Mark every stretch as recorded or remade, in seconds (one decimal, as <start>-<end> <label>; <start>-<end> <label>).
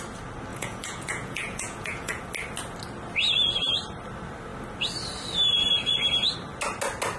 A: 0.0-0.5 recorded; 0.5-2.2 remade; 2.2-7.2 recorded